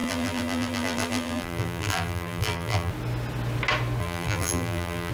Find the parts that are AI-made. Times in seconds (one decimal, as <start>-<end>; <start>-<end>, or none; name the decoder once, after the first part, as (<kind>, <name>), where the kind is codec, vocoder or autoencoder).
0.0-2.9 (vocoder, BigVGAN v2); 4.0-5.1